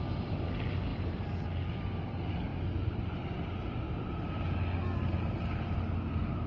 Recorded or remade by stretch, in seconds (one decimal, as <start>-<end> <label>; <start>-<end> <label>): 0.0-6.5 recorded